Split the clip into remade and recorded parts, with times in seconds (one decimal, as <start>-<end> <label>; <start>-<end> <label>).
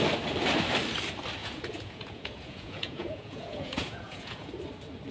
0.0-1.4 recorded; 1.4-4.5 remade; 4.5-5.1 recorded